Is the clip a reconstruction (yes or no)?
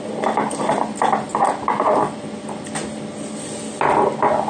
no